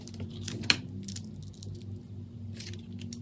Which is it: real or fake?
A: real